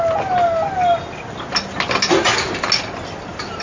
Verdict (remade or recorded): recorded